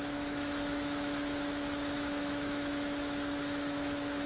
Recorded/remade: remade